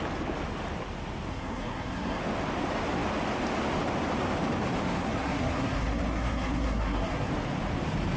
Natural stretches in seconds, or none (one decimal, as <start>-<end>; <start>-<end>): 0.0-1.3; 2.2-4.9; 7.3-8.2

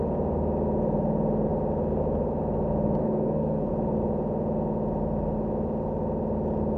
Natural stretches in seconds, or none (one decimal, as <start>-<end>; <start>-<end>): 0.0-3.0; 3.7-6.8

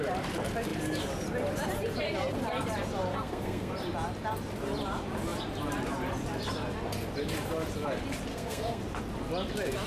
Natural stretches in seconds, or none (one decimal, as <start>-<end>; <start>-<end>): 0.0-3.1; 3.7-8.3; 8.8-9.9

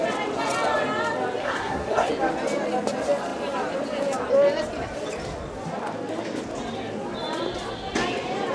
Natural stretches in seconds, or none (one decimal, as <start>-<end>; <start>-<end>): 0.0-1.4; 2.1-8.5

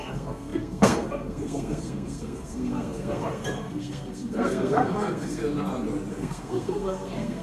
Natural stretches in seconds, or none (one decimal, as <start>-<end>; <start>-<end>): 5.4-6.1

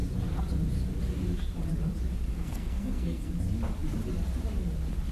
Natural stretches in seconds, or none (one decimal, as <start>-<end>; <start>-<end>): 0.0-2.3; 3.3-5.1